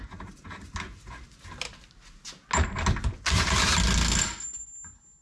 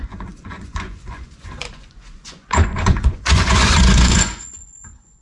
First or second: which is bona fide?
first